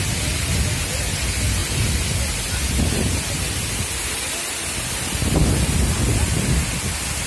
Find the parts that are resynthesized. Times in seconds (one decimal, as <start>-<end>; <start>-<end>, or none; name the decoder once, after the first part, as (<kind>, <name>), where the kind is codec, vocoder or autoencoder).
none